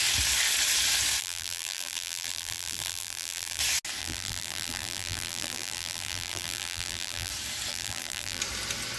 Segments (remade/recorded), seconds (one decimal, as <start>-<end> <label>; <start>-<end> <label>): 0.0-1.2 recorded; 1.2-3.6 remade; 3.6-4.0 recorded; 4.0-7.3 remade; 7.3-7.7 recorded; 7.7-8.4 remade; 8.4-9.0 recorded

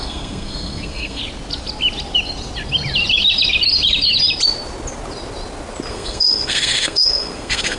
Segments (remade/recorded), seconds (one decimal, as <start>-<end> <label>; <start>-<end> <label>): 0.0-1.2 remade; 1.2-5.9 recorded; 5.9-7.8 remade

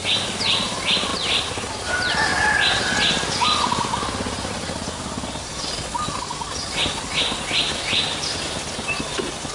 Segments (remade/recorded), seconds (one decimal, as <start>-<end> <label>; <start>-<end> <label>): 0.0-9.5 recorded

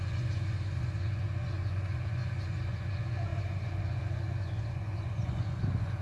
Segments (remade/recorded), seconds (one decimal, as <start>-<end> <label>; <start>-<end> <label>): 0.0-6.0 remade

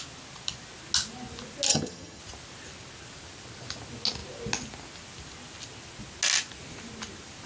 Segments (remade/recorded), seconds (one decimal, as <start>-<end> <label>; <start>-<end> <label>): 0.0-1.7 recorded; 1.7-2.2 remade; 2.2-7.5 recorded

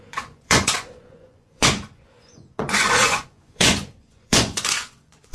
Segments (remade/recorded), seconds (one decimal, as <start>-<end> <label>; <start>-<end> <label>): 0.0-5.3 remade